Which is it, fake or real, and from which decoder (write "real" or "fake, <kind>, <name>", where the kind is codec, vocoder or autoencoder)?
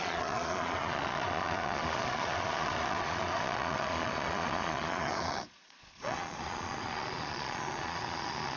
fake, vocoder, Vocos